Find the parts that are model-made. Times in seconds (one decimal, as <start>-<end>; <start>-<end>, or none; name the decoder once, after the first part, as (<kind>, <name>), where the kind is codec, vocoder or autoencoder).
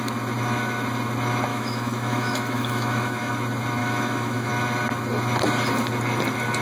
1.5-3.3 (autoencoder, DAC-VAE); 3.8-4.5